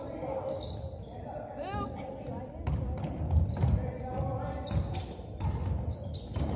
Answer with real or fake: real